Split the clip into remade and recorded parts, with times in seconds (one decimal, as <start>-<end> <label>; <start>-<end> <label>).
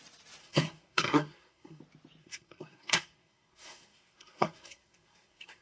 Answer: 0.0-0.4 recorded; 0.4-1.8 remade; 1.8-2.2 recorded; 2.2-5.6 remade